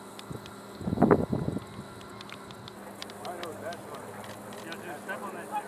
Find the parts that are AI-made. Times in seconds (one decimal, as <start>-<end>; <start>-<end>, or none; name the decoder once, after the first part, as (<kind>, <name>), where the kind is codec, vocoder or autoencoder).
none